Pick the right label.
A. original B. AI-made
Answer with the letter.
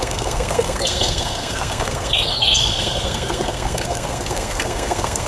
B